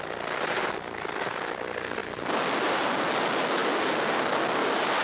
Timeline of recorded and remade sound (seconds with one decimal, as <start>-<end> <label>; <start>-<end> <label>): 0.0-5.0 recorded